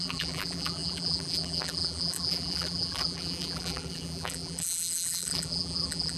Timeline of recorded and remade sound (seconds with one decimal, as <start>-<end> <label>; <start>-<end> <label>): 0.0-6.2 remade